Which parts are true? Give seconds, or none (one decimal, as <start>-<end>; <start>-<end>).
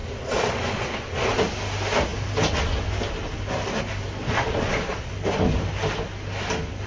1.3-4.3; 5.1-6.9